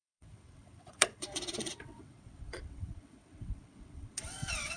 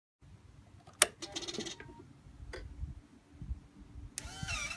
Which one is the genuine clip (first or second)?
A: second